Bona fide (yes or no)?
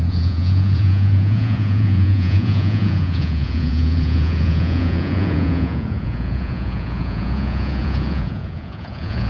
no